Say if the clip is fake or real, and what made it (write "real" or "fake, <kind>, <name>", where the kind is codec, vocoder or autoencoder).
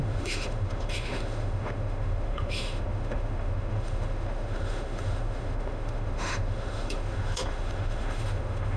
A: fake, autoencoder, DAC-VAE